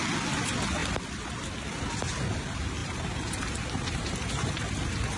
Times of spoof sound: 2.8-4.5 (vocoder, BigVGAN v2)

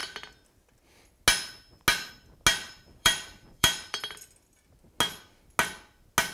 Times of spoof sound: 2.6-4.0 (vocoder, BigVGAN v2)

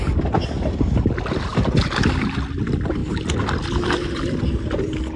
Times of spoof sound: none

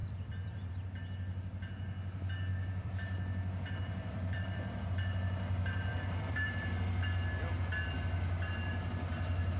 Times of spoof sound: 0.0-0.7 (vocoder, BigVGAN v2); 2.5-4.9; 5.9-6.7

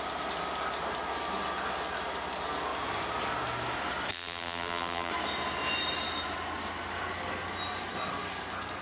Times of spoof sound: 4.1-5.1 (vocoder, BigVGAN v2)

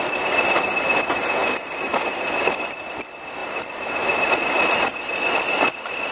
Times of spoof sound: 1.4-3.0 (vocoder, BigVGAN v2); 3.4-4.3

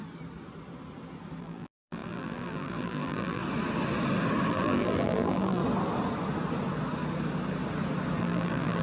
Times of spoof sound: 1.4-3.4 (vocoder, BigVGAN v2); 4.5-5.6; 8.2-8.8